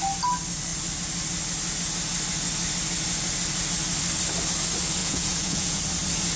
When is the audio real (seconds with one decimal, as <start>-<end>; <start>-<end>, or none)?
0.0-5.0; 5.8-6.4